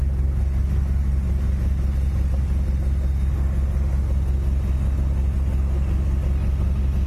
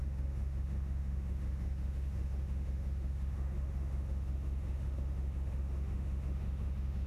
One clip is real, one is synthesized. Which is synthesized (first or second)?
second